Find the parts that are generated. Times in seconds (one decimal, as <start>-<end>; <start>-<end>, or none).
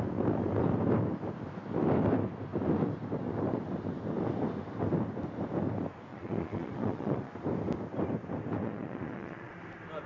6.1-7.3; 8.6-9.5